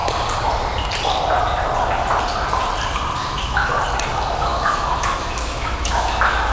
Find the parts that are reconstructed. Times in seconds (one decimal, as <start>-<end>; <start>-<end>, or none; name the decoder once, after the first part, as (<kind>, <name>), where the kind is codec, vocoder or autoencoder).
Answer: 3.2-3.7 (autoencoder, DAC-VAE); 4.5-6.5